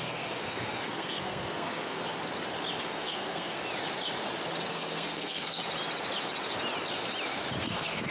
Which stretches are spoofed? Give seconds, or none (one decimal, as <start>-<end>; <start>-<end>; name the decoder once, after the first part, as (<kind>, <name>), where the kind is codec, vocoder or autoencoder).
0.0-2.0 (codec, SNAC); 2.8-3.6; 4.7-5.6; 7.6-8.1